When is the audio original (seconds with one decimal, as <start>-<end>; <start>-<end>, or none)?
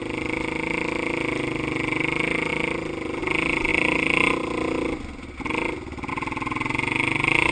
0.0-7.5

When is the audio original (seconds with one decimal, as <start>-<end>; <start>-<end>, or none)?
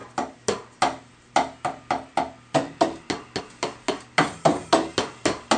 0.0-5.6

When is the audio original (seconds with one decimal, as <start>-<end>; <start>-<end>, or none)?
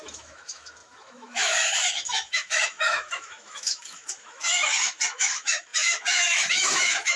none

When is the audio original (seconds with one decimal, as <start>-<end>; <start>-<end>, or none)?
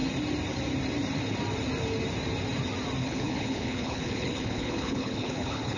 0.0-3.0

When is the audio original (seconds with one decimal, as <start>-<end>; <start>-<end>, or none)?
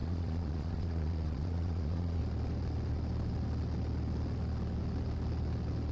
2.2-5.9